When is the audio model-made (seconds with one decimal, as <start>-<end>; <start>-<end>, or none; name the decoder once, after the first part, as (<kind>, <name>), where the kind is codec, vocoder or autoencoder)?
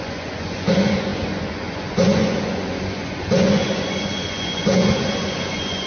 0.0-5.9 (vocoder, Vocos)